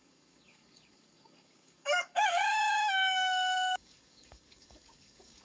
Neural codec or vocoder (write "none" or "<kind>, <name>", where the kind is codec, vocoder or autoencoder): codec, DAC